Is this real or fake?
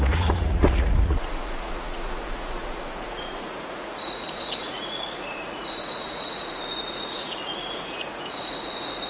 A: fake